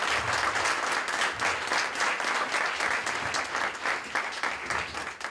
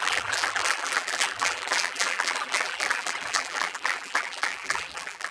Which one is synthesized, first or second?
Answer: second